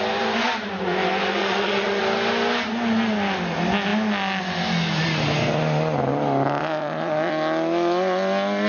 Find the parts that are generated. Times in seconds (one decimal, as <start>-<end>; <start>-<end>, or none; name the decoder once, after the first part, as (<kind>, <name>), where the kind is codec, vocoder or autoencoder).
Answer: 1.4-2.0 (vocoder, Vocos); 6.6-7.3